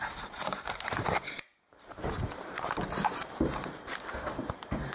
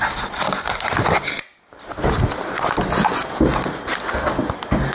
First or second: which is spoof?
first